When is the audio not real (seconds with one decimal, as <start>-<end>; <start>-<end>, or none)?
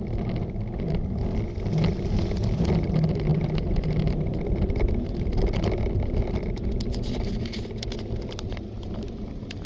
none